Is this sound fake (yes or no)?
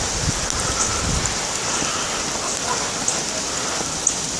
no